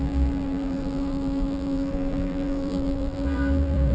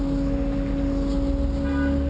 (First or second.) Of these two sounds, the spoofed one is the first